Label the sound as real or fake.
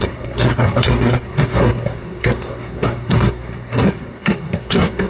fake